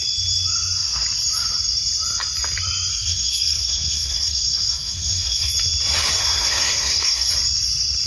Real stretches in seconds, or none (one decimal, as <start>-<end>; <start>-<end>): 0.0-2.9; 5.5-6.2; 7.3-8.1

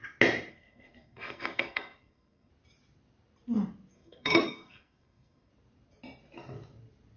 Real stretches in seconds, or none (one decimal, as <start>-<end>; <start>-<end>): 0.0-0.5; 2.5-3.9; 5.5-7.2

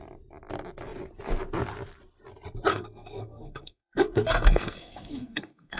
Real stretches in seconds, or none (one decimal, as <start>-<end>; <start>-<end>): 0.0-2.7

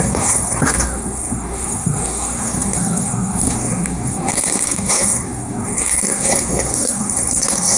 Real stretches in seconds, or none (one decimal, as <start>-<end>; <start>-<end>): none

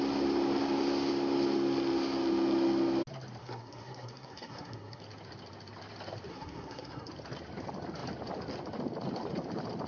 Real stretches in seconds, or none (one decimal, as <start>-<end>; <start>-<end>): 0.0-3.4; 5.0-6.3; 7.1-9.9

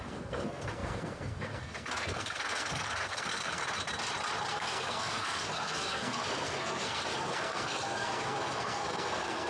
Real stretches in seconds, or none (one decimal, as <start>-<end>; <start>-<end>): 3.6-4.5

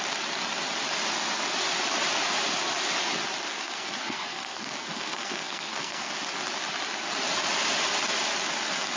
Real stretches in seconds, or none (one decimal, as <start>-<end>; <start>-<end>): 0.0-3.5; 6.1-9.0

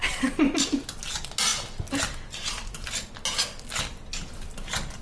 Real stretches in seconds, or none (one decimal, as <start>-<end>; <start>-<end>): 0.0-5.0